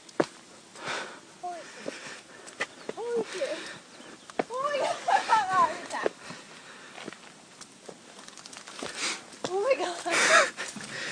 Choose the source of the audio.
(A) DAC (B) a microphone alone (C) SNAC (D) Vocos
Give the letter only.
B